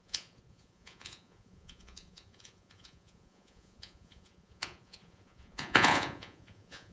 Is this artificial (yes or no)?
yes